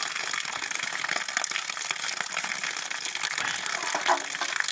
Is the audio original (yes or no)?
yes